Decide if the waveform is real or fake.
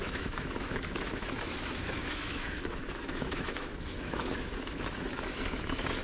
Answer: fake